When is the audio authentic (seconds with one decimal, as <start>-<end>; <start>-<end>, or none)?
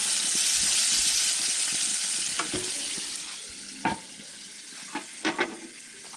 0.0-6.2